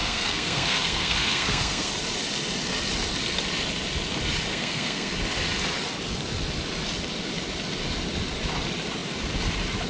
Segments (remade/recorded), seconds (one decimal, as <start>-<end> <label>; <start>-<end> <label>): 0.0-1.9 remade; 1.9-4.5 recorded; 4.5-5.1 remade; 5.1-9.9 recorded